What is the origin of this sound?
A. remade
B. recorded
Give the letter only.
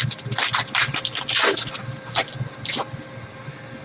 B